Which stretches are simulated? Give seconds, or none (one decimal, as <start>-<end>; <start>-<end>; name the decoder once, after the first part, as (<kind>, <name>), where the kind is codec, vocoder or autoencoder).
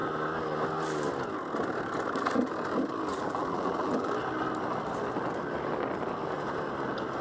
3.1-4.1 (vocoder, BigVGAN v2)